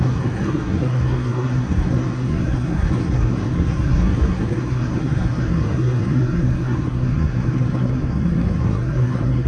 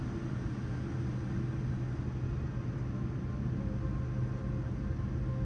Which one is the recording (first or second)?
second